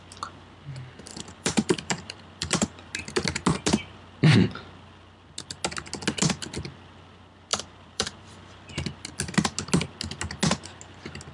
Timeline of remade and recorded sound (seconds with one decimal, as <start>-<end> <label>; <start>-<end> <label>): 0.0-1.1 recorded; 1.1-2.9 remade; 2.9-7.5 recorded; 7.5-8.7 remade; 8.7-11.3 recorded